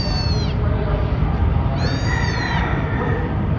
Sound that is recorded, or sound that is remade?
remade